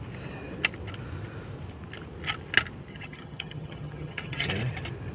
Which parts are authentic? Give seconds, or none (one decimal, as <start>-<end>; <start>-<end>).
0.0-2.9; 4.5-5.1